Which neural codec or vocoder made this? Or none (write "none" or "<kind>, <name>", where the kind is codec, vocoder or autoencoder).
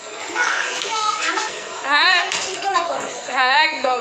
codec, SNAC